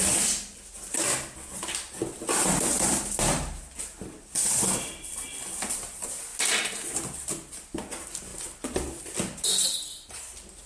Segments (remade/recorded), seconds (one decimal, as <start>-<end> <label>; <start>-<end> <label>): 0.0-10.7 recorded